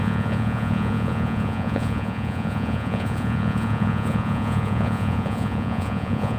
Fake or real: fake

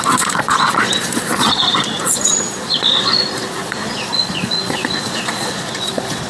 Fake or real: fake